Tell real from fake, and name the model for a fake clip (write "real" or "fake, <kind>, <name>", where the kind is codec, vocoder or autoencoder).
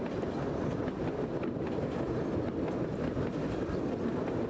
real